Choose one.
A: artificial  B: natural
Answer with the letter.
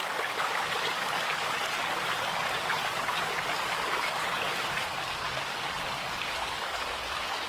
A